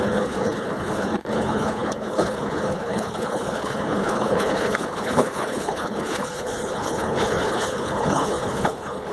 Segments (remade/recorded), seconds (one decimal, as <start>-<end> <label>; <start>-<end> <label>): 0.0-9.1 remade